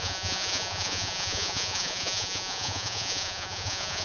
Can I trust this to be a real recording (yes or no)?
no